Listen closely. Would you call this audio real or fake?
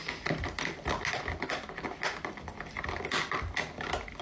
real